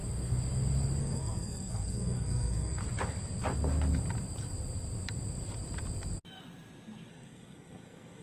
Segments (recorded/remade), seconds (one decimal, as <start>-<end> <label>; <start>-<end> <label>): 0.0-1.0 recorded; 1.0-2.8 remade; 2.8-7.1 recorded; 7.1-8.2 remade